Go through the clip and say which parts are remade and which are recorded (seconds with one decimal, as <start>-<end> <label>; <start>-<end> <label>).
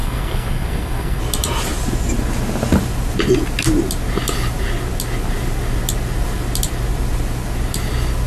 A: 0.0-1.2 remade; 1.2-8.3 recorded